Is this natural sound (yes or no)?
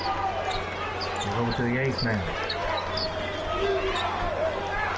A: yes